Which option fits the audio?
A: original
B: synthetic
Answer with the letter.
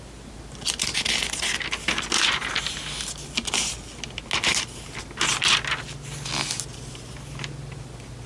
A